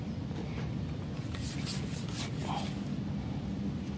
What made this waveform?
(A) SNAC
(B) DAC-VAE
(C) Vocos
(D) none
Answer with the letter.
D